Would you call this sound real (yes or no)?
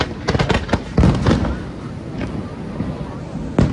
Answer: yes